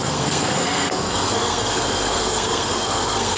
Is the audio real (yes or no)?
no